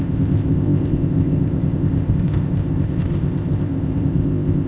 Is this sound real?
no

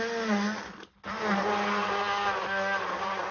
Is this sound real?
yes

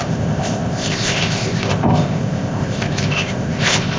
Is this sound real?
no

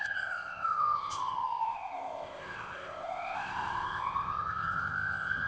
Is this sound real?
no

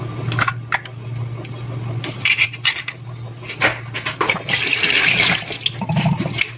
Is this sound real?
yes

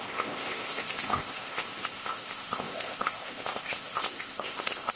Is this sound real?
no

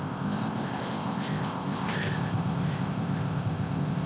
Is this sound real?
no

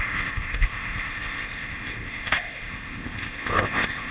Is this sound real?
no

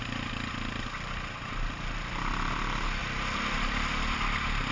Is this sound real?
yes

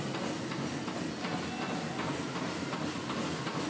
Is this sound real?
yes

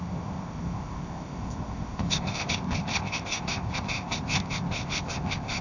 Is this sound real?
no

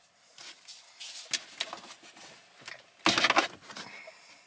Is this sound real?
yes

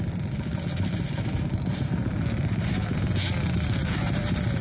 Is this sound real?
yes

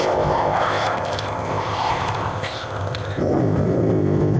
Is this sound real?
no